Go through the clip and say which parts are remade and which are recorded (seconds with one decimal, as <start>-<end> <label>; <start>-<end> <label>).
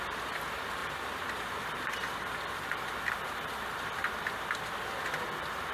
0.0-0.8 recorded; 0.8-4.2 remade; 4.2-5.7 recorded